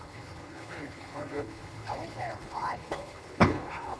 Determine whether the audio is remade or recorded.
remade